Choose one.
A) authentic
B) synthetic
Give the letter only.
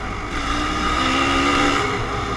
A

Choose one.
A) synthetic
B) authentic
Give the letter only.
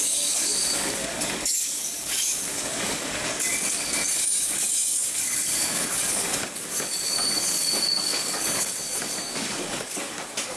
A